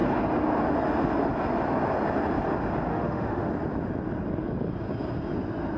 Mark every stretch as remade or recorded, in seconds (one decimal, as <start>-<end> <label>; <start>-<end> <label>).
0.0-2.9 recorded; 2.9-3.5 remade; 3.5-5.8 recorded